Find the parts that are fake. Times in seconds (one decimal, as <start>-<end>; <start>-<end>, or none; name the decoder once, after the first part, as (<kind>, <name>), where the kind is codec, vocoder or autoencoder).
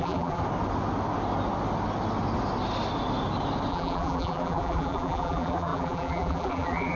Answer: 0.0-0.4 (vocoder, BigVGAN v2); 3.7-7.0